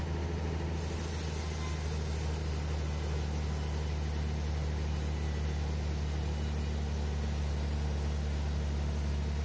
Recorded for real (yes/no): yes